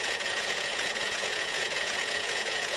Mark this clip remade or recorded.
remade